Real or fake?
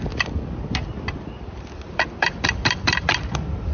fake